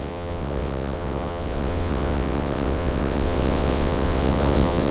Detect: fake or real fake